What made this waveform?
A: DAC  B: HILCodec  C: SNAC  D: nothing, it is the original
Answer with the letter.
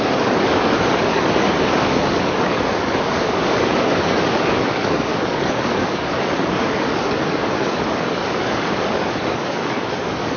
A